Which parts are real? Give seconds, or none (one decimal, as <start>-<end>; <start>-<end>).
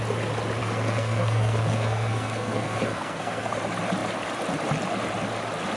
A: 0.0-0.6; 3.6-5.8